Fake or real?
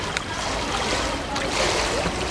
real